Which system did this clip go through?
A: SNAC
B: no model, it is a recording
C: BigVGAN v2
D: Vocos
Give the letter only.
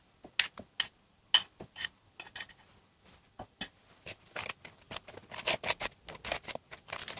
B